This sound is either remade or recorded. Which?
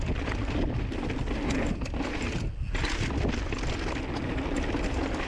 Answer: recorded